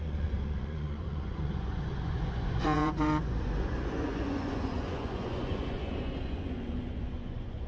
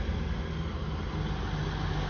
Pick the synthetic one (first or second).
first